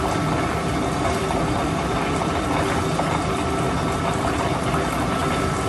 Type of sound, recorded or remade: recorded